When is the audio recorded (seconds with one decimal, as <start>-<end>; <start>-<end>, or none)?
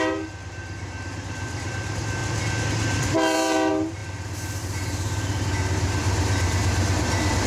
2.2-2.7; 4.0-4.6